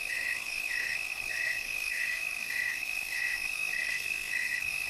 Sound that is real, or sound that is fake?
fake